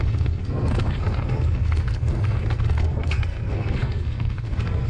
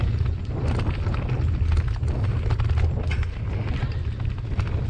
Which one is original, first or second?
second